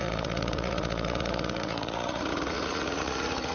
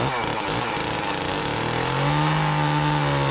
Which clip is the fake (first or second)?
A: first